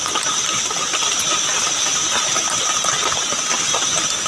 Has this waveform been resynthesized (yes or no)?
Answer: no